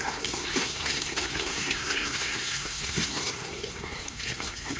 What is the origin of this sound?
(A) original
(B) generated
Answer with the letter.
B